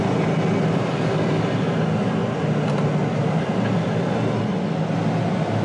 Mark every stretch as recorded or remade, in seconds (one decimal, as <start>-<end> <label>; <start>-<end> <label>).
0.0-5.6 recorded